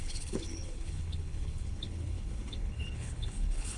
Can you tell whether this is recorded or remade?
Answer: remade